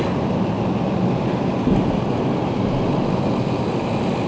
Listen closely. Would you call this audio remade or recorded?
recorded